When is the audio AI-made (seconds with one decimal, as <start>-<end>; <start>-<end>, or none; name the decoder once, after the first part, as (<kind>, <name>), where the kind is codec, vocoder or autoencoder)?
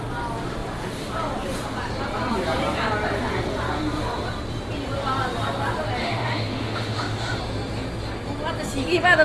6.0-7.4 (autoencoder, DAC-VAE)